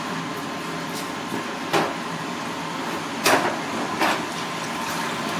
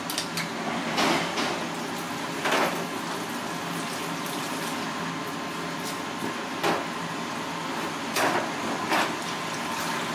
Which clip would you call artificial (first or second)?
first